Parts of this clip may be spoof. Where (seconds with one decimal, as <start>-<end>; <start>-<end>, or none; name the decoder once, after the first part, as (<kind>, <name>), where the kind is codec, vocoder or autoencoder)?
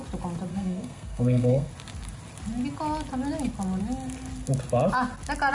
0.5-1.7 (codec, SNAC)